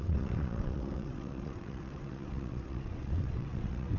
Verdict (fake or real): fake